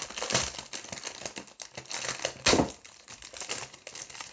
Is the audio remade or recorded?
recorded